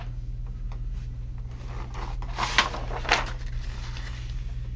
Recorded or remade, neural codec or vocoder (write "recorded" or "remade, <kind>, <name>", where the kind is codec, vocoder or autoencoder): recorded